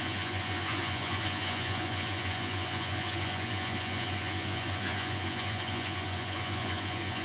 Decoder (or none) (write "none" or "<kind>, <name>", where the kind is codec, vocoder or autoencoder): vocoder, Vocos